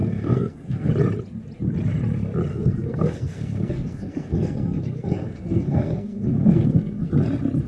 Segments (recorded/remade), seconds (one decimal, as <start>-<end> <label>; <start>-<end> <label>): 0.0-0.9 remade; 0.9-2.5 recorded; 2.5-7.1 remade; 7.1-7.7 recorded